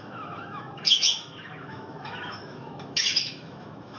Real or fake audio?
fake